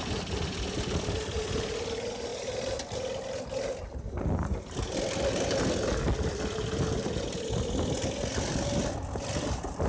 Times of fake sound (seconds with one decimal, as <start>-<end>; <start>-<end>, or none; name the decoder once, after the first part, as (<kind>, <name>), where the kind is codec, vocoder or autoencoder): none